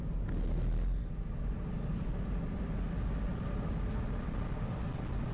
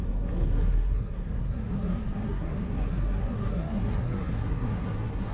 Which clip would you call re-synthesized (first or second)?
second